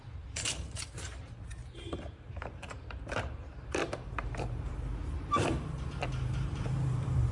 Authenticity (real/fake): fake